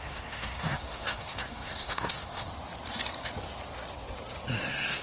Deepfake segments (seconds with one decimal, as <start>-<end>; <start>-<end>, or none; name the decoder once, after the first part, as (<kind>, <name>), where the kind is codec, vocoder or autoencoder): 0.0-2.5 (codec, SNAC); 4.6-5.0